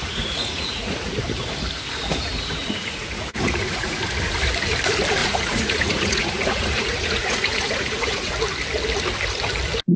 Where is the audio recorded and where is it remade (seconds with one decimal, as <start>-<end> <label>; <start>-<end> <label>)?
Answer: 0.0-1.2 remade; 1.2-2.6 recorded; 2.6-4.0 remade; 4.0-5.2 recorded; 5.2-8.3 remade; 8.3-10.0 recorded